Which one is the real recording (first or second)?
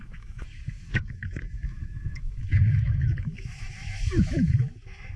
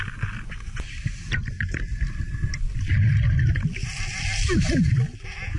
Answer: second